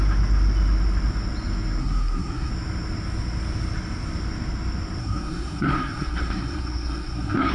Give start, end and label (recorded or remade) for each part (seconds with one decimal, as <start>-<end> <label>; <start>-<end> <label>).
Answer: 0.0-1.8 recorded; 1.8-2.5 remade; 2.5-5.0 recorded; 5.0-7.5 remade